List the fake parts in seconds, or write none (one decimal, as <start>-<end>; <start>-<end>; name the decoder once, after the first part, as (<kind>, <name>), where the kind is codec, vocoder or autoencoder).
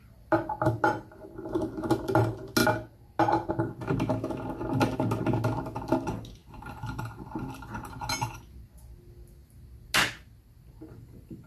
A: none